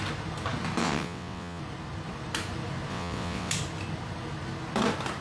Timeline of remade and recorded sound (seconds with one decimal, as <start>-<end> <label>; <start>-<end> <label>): 0.0-0.8 recorded; 0.8-1.6 remade; 1.6-2.9 recorded; 2.9-3.5 remade; 3.5-5.2 recorded